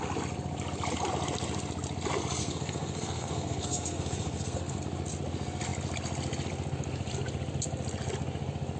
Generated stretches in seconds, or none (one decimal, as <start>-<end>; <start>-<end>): 2.4-4.8